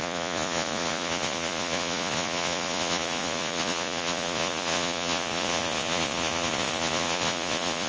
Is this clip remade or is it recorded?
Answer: remade